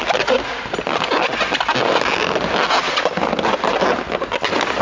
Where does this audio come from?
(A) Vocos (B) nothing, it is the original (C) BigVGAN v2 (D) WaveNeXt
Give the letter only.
B